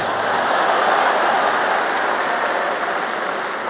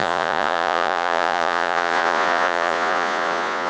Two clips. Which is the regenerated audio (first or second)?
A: second